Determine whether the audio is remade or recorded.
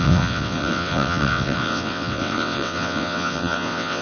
remade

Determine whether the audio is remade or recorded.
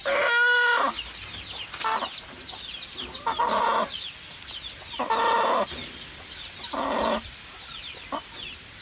recorded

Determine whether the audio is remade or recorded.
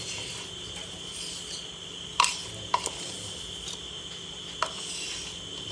recorded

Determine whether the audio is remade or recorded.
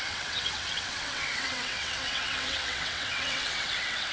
remade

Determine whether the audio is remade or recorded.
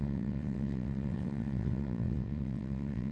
remade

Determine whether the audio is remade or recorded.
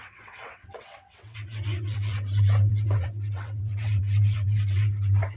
remade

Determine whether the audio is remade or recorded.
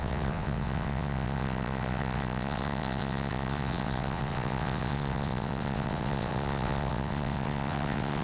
remade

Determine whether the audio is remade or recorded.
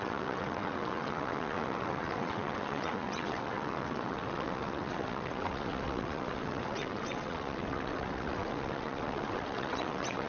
remade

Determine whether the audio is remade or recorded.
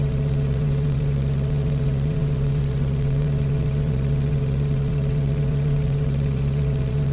remade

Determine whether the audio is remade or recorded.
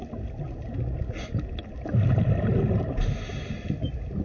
recorded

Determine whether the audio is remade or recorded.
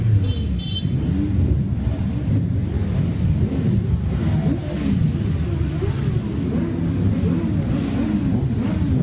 recorded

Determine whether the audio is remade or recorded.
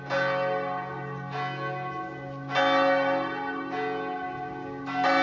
recorded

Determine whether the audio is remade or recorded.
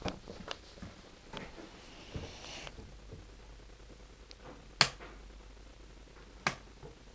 recorded